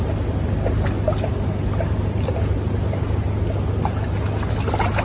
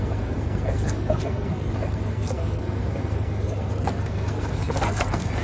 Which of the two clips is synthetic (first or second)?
second